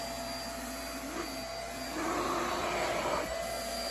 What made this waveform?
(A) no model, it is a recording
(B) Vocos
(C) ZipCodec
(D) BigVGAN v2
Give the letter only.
A